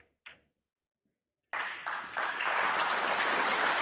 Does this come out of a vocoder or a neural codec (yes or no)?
no